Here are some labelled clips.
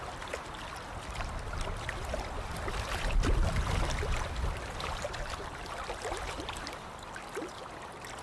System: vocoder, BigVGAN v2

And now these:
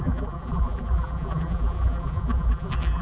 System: vocoder, BigVGAN v2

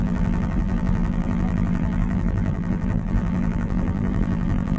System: vocoder, BigVGAN v2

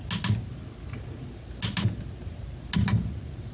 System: none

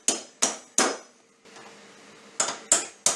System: none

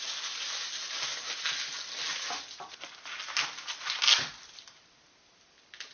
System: none